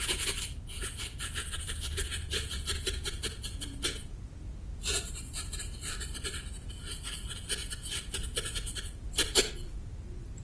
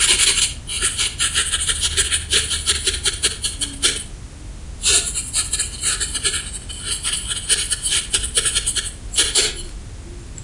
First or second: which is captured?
second